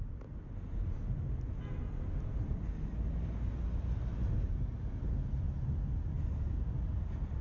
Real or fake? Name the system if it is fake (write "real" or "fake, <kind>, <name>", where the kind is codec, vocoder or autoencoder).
real